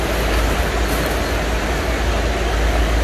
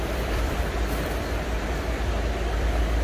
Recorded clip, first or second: first